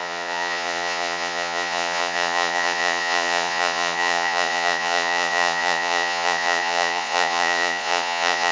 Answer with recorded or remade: remade